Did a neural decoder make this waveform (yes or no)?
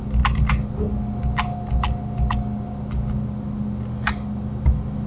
no